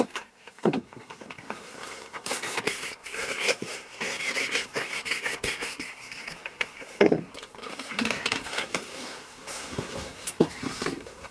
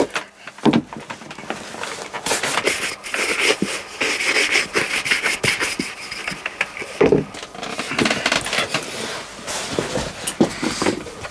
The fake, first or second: first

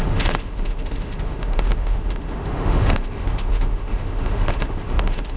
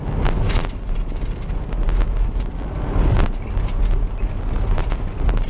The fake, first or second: first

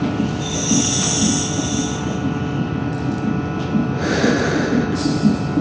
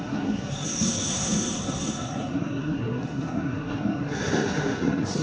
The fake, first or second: second